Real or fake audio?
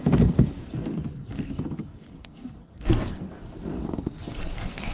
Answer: fake